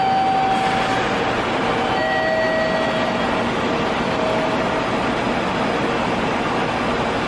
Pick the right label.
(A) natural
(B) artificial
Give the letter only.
A